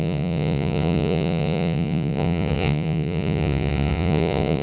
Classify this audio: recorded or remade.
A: remade